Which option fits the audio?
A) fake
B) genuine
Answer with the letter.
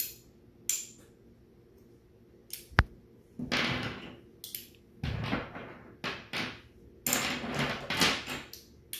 B